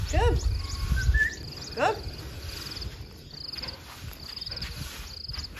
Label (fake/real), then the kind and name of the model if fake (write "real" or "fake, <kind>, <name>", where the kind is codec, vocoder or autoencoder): real